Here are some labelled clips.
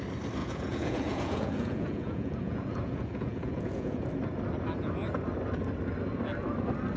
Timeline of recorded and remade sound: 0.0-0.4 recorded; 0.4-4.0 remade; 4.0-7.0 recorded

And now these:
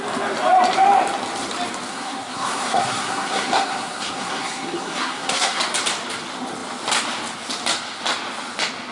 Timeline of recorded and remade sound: 0.0-1.9 recorded; 1.9-5.6 remade; 5.6-8.9 recorded